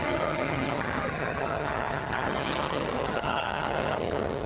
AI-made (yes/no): yes